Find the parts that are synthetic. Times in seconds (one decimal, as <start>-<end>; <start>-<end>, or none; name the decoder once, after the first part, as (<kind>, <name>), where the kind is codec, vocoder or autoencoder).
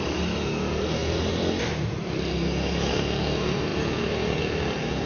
none